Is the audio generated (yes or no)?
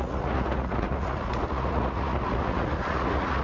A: yes